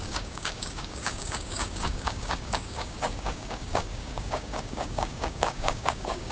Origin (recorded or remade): remade